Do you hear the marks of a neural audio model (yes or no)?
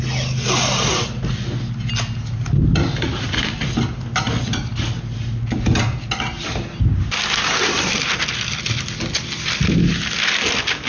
no